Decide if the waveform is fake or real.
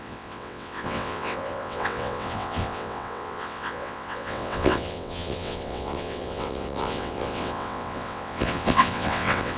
fake